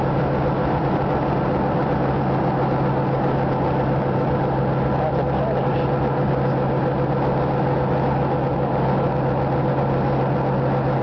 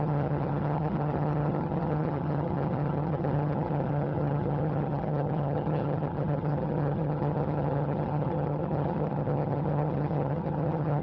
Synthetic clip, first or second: second